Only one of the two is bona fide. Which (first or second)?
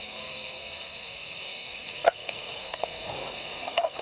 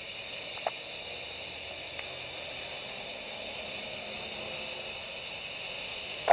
second